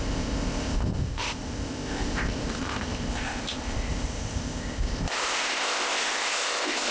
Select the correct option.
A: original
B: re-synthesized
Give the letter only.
B